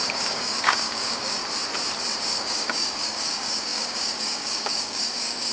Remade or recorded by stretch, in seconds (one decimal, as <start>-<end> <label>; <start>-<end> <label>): 0.0-1.4 remade; 1.4-2.2 recorded; 2.2-5.5 remade

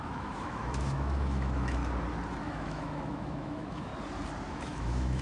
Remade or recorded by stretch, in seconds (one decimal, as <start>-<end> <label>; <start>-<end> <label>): 0.0-1.8 remade; 1.8-2.4 recorded; 2.4-3.9 remade; 3.9-4.5 recorded; 4.5-5.2 remade

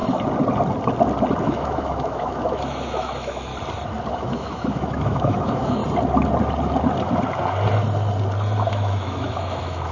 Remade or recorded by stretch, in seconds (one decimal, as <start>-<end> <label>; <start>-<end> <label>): 0.0-1.4 recorded; 1.4-3.5 remade; 3.5-4.1 recorded; 4.1-5.8 remade; 5.8-8.7 recorded; 8.7-9.9 remade

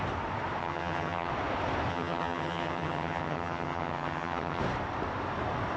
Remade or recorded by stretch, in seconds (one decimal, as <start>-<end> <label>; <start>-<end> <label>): 0.0-0.6 recorded; 0.6-1.3 remade; 1.3-1.9 recorded; 1.9-4.6 remade; 4.6-5.8 recorded

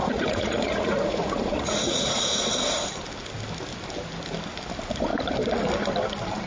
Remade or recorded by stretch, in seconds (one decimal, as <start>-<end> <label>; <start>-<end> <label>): 0.0-2.1 remade; 2.1-6.5 recorded

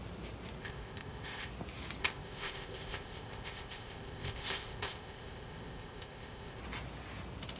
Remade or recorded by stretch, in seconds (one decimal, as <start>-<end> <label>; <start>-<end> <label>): 0.0-0.6 recorded; 0.6-1.5 remade; 1.5-2.0 recorded; 2.0-6.6 remade; 6.6-7.6 recorded